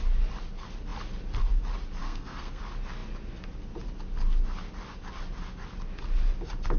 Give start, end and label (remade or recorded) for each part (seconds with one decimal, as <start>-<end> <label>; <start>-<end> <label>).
0.0-2.0 recorded; 2.0-2.6 remade; 2.6-6.8 recorded